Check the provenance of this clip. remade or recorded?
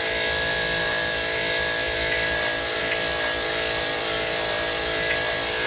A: remade